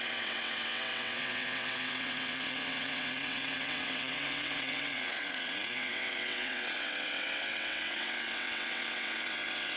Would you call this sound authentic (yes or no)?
no